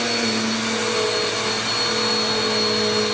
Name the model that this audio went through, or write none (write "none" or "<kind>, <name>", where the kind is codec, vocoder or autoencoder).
none